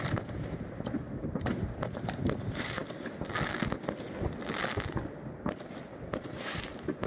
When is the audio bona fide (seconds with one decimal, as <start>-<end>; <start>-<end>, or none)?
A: 2.8-6.2

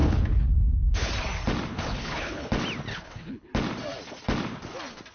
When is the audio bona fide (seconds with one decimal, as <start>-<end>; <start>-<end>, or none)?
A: 1.1-1.7; 2.5-2.9; 3.5-5.1

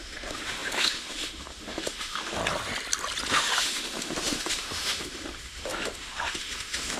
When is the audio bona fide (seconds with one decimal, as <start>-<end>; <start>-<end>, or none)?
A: 2.4-3.3

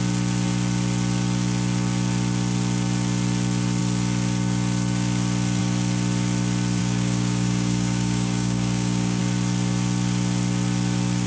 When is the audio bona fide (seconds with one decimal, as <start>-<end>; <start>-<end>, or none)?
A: 0.0-6.8; 9.2-11.3

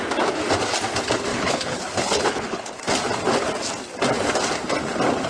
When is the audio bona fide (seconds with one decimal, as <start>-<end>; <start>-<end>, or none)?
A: 0.0-1.3; 2.8-5.3

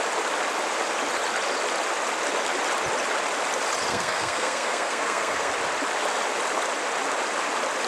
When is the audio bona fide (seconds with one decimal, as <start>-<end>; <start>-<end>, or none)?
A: 0.0-3.9; 5.5-7.9

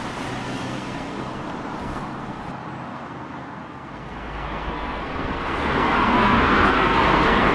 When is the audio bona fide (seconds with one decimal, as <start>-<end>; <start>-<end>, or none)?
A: 0.0-0.4; 1.4-1.8; 2.4-2.9